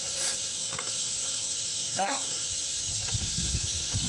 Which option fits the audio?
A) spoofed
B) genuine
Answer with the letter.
A